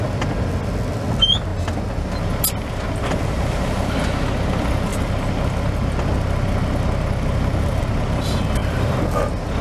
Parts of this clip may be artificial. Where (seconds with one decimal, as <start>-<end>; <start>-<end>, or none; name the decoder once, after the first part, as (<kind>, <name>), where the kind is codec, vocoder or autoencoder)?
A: 8.6-9.2 (vocoder, BigVGAN v2)